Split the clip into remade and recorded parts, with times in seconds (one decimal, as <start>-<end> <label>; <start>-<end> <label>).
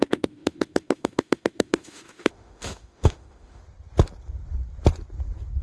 0.0-3.6 remade; 3.6-5.6 recorded